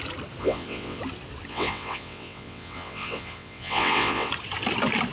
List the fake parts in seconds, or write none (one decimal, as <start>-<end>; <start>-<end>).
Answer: 0.4-1.0; 1.5-4.3